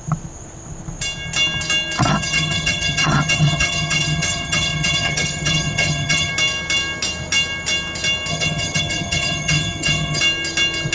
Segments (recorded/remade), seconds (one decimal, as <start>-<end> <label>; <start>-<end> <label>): 0.0-2.1 recorded; 2.1-6.3 remade; 6.3-8.3 recorded; 8.3-10.2 remade; 10.2-10.9 recorded